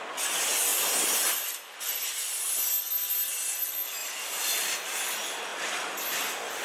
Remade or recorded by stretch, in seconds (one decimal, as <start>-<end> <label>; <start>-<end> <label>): 0.0-4.0 recorded; 4.0-4.7 remade; 4.7-6.6 recorded